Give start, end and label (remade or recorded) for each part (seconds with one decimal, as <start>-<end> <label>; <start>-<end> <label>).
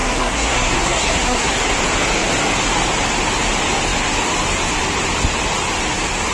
0.0-1.7 remade; 1.7-6.3 recorded